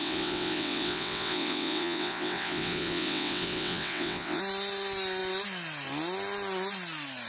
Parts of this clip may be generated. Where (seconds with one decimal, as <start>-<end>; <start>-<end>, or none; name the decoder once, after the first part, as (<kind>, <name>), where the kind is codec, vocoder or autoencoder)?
0.0-4.4 (vocoder, WaveNeXt)